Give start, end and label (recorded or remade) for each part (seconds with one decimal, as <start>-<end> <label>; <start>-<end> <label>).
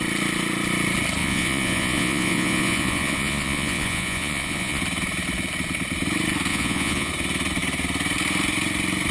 0.0-1.2 recorded; 1.2-4.8 remade; 4.8-6.5 recorded; 6.5-7.1 remade; 7.1-9.1 recorded